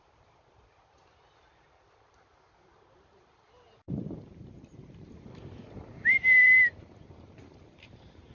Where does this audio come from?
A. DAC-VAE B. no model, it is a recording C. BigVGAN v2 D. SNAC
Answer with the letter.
C